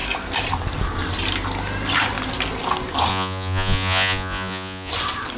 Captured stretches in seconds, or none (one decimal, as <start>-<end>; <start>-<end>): 0.0-3.1; 4.9-5.4